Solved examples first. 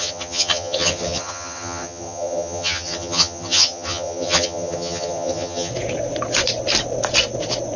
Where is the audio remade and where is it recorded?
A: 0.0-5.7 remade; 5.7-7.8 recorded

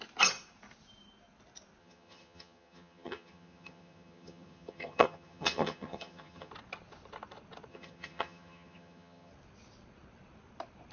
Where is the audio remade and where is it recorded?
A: 0.0-1.8 recorded; 1.8-6.5 remade; 6.5-7.7 recorded; 7.7-9.3 remade; 9.3-10.9 recorded

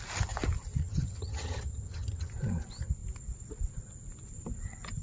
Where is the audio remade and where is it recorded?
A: 0.0-0.8 recorded; 0.8-2.3 remade; 2.3-5.0 recorded

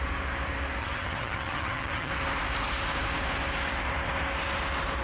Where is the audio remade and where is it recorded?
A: 0.0-0.8 recorded; 0.8-2.1 remade; 2.1-5.0 recorded

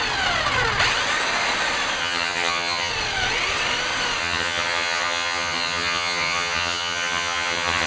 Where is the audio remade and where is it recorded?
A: 0.0-2.0 recorded; 2.0-2.9 remade; 2.9-4.2 recorded; 4.2-7.9 remade

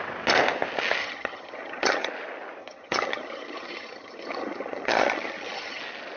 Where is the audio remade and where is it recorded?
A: 0.0-1.0 recorded; 1.0-2.1 remade; 2.1-2.6 recorded; 2.6-5.8 remade; 5.8-6.2 recorded

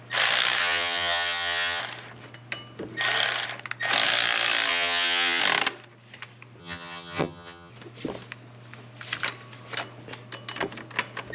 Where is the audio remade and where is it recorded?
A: 0.0-0.6 recorded; 0.6-1.8 remade; 1.8-4.7 recorded; 4.7-5.4 remade; 5.4-6.6 recorded; 6.6-7.7 remade; 7.7-11.3 recorded

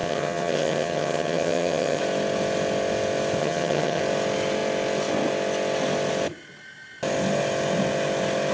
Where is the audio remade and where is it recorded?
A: 0.0-2.0 remade; 2.0-3.4 recorded; 3.4-4.0 remade; 4.0-8.5 recorded